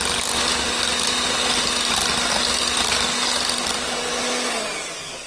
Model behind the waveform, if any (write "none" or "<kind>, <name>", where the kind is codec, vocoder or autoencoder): none